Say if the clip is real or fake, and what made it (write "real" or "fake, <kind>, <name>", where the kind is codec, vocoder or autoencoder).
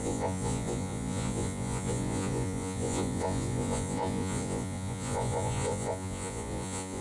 fake, vocoder, Vocos